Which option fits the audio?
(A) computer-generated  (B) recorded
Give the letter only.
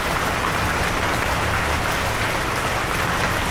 B